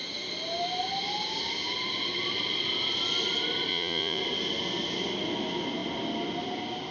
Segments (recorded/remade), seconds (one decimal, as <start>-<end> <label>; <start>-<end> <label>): 0.0-3.7 recorded; 3.7-4.2 remade; 4.2-6.9 recorded